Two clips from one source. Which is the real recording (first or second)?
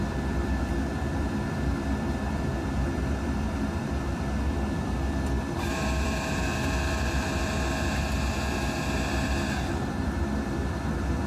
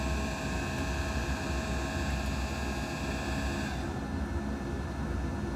second